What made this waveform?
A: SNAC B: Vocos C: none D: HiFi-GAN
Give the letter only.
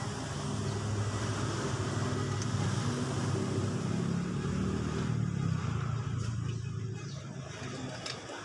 C